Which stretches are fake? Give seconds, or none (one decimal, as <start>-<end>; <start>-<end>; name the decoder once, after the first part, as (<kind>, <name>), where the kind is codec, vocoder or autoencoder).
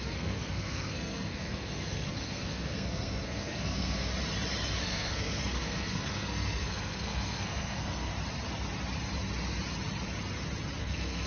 0.0-4.1 (codec, SNAC); 4.8-8.1; 10.8-11.3